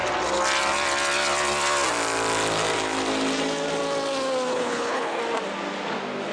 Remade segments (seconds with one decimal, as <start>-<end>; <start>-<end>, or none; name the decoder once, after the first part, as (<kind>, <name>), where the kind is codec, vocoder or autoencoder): 4.5-5.2 (codec, HILCodec)